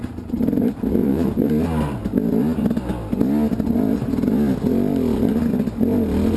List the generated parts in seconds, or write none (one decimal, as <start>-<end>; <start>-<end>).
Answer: 1.0-1.5